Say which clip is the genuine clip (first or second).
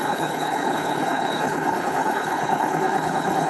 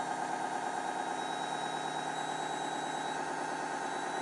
second